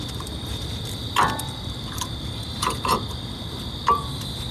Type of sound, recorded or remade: remade